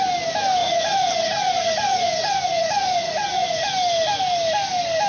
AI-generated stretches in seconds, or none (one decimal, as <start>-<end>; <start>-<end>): 0.6-3.7